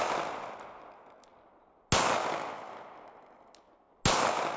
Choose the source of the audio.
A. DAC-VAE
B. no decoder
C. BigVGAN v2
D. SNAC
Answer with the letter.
B